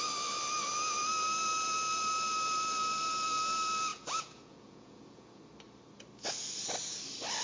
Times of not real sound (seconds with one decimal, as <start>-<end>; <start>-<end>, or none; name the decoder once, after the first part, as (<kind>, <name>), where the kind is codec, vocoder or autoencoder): 3.9-5.4 (vocoder, Vocos)